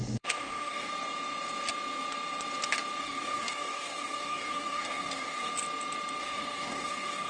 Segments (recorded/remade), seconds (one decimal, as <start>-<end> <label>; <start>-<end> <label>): 0.0-0.9 remade; 0.9-3.0 recorded; 3.0-5.5 remade; 5.5-6.2 recorded; 6.2-7.3 remade